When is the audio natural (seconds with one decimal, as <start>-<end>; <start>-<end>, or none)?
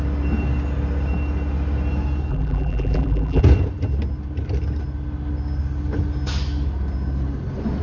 0.0-2.3; 3.4-7.8